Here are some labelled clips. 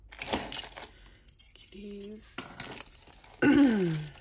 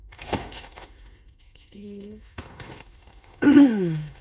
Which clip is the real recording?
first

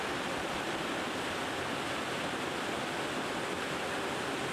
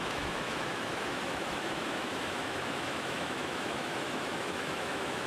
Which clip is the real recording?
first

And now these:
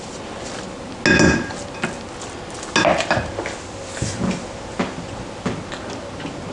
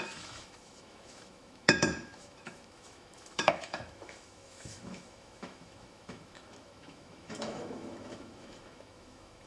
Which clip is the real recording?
first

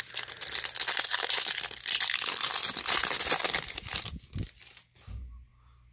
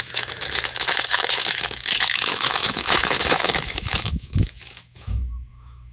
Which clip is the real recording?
first